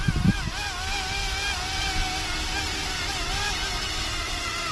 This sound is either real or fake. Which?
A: real